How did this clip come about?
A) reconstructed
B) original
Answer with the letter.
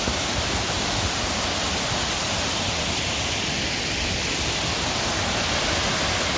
B